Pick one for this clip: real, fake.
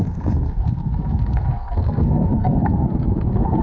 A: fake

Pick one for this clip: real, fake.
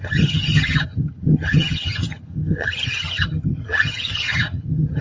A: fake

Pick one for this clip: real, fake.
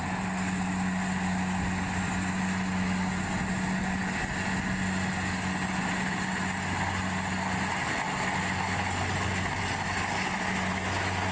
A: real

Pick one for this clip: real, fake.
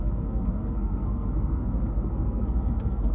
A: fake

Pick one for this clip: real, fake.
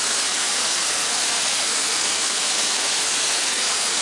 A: fake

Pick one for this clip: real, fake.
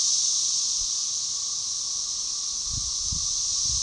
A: real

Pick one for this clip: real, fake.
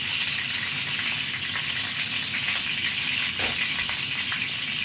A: real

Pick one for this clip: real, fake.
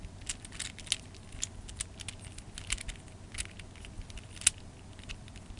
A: real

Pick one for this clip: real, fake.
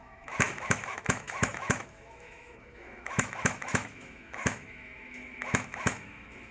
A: fake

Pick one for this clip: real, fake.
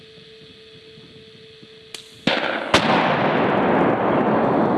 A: real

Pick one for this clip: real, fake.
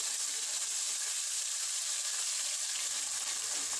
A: real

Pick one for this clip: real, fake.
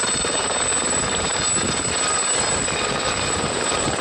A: real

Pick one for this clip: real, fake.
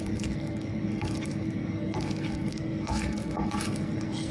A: fake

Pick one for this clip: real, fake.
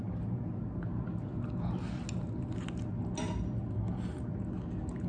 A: real